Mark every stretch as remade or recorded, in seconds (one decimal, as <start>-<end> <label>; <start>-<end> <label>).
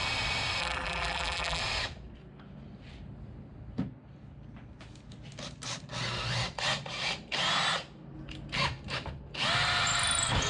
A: 0.0-0.6 recorded; 0.6-1.6 remade; 1.6-10.5 recorded